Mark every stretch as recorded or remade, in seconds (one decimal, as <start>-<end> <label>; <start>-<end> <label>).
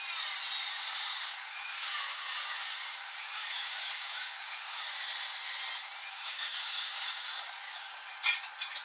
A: 0.0-0.7 recorded; 0.7-4.9 remade; 4.9-6.0 recorded; 6.0-7.9 remade; 7.9-8.8 recorded